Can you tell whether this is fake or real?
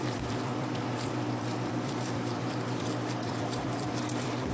fake